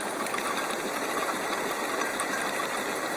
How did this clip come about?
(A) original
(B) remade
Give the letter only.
A